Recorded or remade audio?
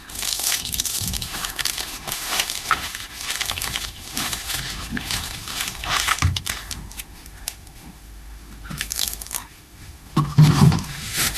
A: remade